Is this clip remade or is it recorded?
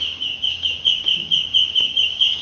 remade